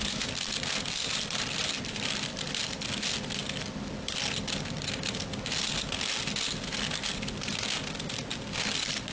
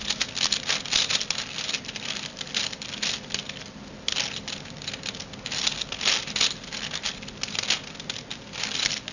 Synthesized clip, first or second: first